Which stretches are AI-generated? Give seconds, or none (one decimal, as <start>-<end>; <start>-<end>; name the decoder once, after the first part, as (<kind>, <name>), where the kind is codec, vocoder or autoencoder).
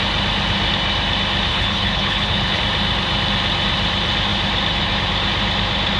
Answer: 1.5-2.6 (codec, HILCodec)